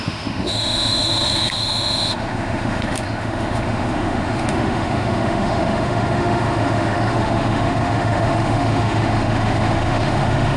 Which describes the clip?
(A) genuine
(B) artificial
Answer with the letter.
B